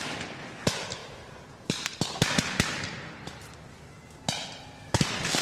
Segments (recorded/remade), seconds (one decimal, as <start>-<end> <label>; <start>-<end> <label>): 0.0-5.4 recorded